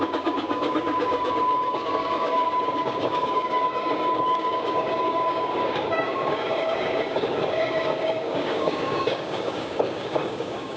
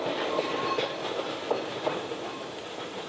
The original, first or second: second